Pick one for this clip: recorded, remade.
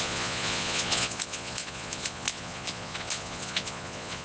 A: remade